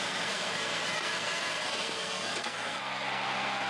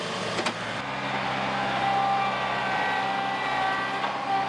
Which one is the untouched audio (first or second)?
second